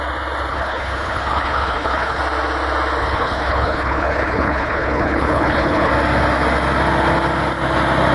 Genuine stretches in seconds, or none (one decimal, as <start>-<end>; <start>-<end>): 0.0-0.5; 2.2-3.0; 5.9-8.1